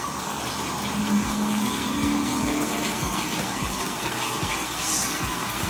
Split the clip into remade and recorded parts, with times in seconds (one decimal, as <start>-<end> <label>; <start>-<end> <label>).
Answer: 0.0-0.4 remade; 0.4-1.0 recorded; 1.0-5.7 remade